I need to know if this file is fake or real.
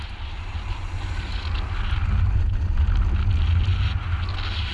real